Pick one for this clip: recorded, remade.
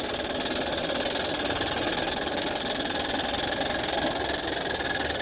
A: recorded